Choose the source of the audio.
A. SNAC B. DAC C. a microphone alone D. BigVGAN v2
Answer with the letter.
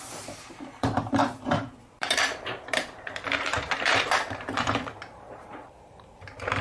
D